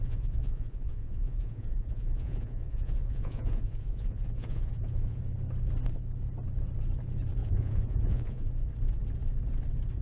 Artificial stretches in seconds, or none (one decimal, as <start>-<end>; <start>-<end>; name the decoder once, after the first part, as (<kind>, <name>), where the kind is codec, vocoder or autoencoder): 0.0-5.2 (vocoder, Vocos); 7.4-8.5